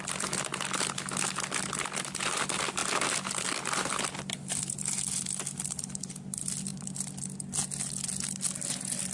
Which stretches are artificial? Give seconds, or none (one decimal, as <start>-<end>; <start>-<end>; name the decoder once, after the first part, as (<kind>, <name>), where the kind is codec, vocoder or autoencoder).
none